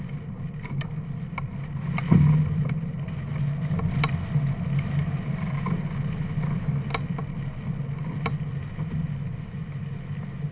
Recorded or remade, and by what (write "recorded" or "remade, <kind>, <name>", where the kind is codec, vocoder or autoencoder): recorded